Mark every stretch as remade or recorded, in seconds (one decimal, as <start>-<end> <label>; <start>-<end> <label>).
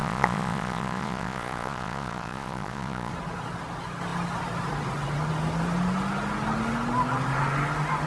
0.0-3.1 remade; 3.1-8.1 recorded